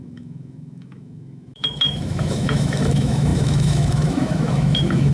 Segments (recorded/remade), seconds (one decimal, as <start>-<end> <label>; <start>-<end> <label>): 0.0-5.1 remade